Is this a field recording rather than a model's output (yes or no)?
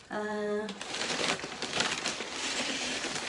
no